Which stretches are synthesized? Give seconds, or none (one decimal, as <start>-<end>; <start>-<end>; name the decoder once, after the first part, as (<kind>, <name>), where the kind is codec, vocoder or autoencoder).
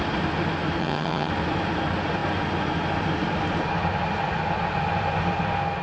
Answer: 0.8-1.3 (vocoder, HiFi-GAN)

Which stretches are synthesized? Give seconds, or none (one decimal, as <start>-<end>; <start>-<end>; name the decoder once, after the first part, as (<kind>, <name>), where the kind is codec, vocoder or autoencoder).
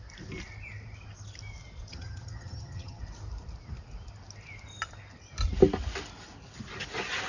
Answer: 1.9-3.0 (vocoder, HiFi-GAN)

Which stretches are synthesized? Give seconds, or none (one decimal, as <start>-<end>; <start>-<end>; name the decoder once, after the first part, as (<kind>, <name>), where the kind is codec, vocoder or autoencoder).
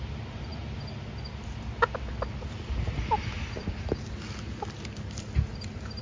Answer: none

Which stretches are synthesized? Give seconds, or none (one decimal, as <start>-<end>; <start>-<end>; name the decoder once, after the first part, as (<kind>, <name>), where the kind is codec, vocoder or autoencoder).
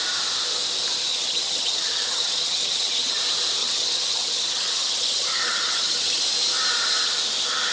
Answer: 1.1-3.2 (vocoder, HiFi-GAN); 3.6-6.2